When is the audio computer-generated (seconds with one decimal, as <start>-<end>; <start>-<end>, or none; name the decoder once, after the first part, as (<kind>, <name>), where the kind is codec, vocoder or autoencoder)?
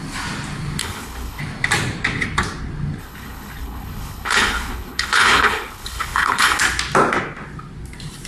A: 0.8-1.4 (codec, HILCodec); 3.0-6.6